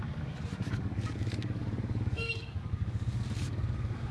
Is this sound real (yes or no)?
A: no